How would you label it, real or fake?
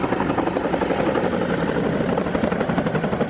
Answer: real